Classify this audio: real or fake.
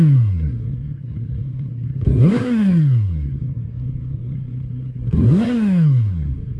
fake